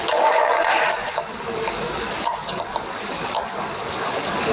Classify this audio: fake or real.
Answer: fake